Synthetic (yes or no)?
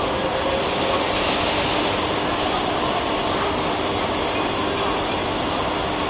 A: no